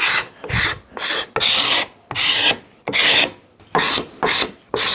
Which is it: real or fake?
real